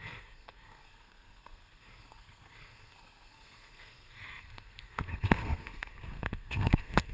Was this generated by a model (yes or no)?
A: yes